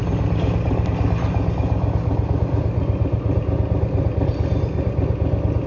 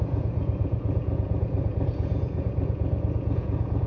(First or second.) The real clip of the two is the first